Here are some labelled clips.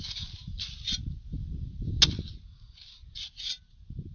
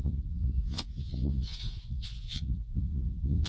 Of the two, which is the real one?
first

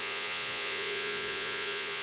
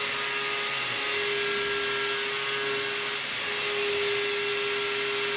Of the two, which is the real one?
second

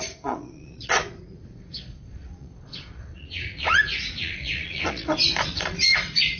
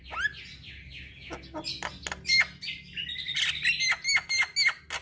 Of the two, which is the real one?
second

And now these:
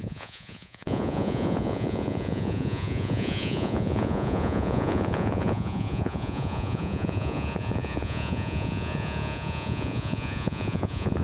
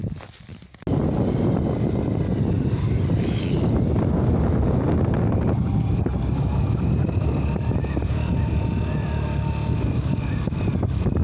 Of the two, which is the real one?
second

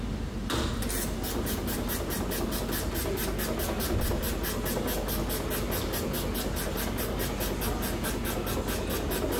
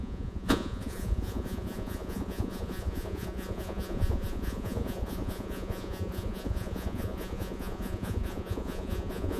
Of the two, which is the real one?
first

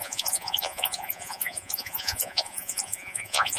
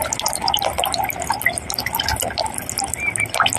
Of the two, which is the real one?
second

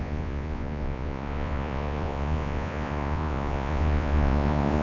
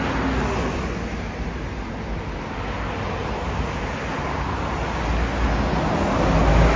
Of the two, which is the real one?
second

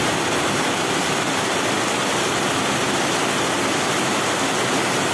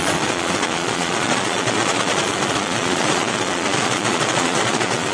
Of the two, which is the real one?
first